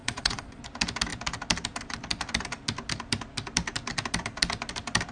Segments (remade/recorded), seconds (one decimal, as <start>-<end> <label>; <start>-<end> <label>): 0.0-0.6 remade; 0.6-5.1 recorded